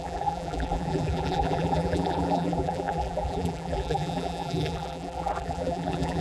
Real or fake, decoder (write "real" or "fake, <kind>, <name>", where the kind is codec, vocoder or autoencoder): fake, vocoder, BigVGAN v2